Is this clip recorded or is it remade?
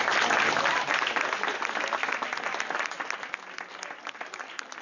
recorded